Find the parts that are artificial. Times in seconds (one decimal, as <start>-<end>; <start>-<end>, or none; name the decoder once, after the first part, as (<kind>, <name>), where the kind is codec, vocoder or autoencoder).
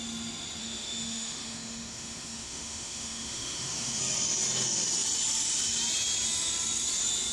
0.6-4.0 (autoencoder, DAC-VAE)